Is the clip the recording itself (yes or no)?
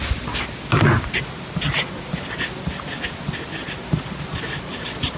yes